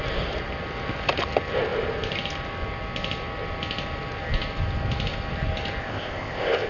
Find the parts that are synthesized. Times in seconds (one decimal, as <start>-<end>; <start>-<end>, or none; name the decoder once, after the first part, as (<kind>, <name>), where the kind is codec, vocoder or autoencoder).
5.8-6.7 (codec, ZipCodec)